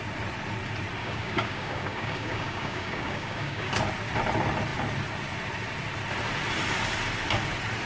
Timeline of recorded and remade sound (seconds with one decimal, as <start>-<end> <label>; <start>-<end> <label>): 0.0-1.0 recorded; 1.0-3.7 remade; 3.7-7.9 recorded